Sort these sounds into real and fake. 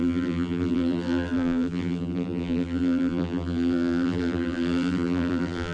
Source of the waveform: fake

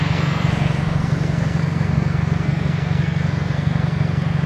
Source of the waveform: fake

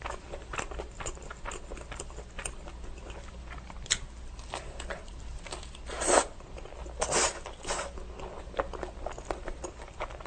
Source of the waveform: real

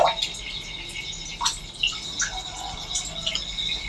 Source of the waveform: real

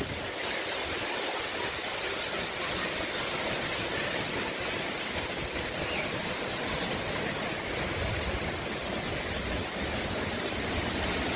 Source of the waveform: real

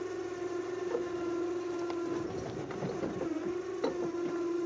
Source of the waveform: real